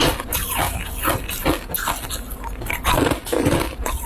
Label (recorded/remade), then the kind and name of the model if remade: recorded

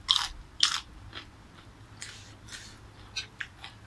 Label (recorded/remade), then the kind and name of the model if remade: recorded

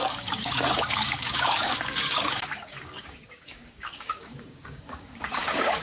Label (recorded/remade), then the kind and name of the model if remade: remade, codec, DAC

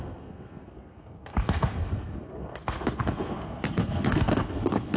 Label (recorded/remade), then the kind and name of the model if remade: remade, codec, SNAC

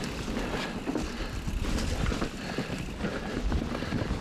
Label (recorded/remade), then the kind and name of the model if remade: recorded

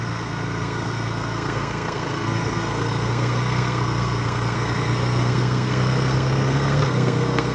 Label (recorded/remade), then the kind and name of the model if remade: remade, codec, SNAC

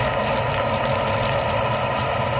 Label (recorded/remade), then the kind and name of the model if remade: recorded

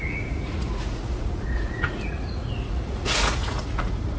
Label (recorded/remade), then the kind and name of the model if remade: remade, vocoder, Vocos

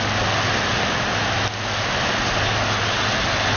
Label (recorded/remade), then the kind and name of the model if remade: recorded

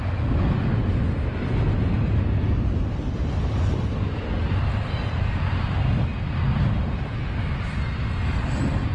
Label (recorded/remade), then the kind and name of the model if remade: recorded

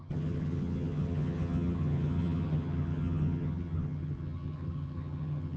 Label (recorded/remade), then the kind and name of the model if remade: remade, vocoder, HiFi-GAN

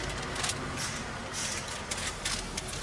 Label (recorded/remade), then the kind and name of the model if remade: recorded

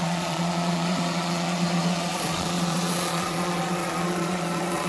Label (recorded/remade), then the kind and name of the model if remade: remade, vocoder, Vocos